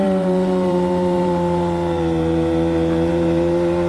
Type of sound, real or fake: fake